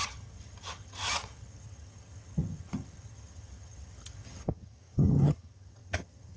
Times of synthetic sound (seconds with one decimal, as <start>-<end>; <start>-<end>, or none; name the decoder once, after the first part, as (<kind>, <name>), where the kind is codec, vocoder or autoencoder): 0.0-6.4 (vocoder, HiFi-GAN)